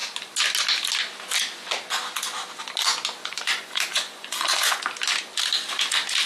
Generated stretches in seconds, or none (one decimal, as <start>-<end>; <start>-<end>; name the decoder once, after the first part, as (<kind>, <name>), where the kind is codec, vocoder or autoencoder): 3.2-4.8 (vocoder, Vocos)